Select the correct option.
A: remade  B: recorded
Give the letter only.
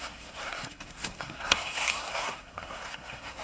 A